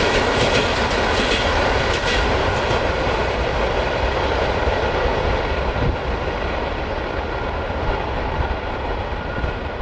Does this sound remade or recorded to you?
recorded